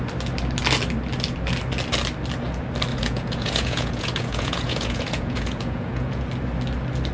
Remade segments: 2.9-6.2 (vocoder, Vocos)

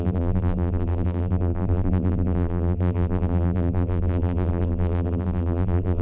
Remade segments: 0.0-6.0 (vocoder, BigVGAN v2)

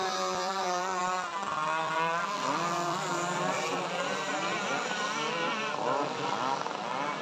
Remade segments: 0.0-1.0 (vocoder, BigVGAN v2); 1.8-7.2

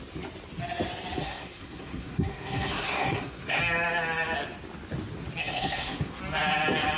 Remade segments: 1.2-3.6 (codec, SNAC); 5.4-6.2

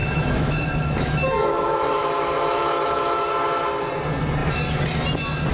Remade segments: 0.0-3.3 (autoencoder, DAC-VAE)

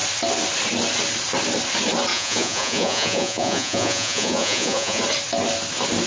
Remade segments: 2.1-5.0 (vocoder, Vocos)